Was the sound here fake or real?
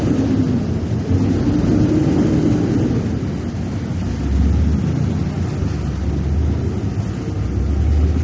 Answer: real